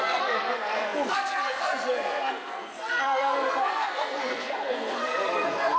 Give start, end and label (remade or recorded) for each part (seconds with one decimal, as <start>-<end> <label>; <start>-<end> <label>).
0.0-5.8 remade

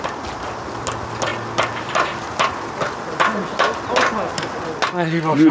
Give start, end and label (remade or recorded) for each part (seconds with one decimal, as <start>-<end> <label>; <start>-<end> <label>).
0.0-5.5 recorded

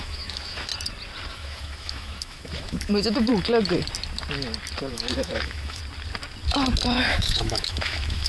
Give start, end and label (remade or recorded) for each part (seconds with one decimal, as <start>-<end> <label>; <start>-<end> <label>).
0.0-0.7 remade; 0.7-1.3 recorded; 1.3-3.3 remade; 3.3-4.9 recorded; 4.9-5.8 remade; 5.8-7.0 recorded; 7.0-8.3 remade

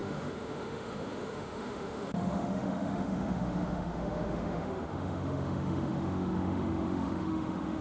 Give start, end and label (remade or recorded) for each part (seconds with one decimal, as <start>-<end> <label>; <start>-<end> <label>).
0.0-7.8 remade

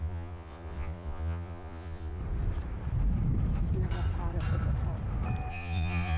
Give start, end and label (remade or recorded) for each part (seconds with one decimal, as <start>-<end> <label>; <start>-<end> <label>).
0.0-2.2 remade; 2.2-5.5 recorded; 5.5-6.2 remade